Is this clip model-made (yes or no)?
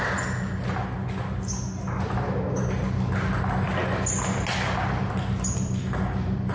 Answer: no